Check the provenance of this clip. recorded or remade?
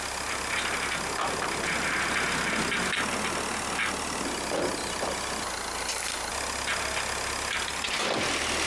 recorded